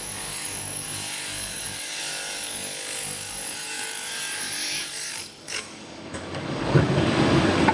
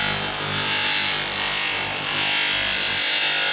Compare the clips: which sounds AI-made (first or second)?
first